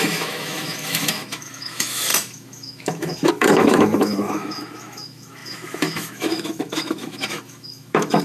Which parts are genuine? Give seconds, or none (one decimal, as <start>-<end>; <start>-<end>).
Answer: none